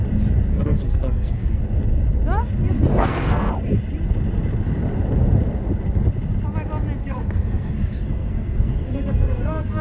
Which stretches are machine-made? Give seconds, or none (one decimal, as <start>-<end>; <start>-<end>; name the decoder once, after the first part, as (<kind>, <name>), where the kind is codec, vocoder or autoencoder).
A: 0.5-1.6 (codec, SNAC); 2.9-3.5; 7.0-9.8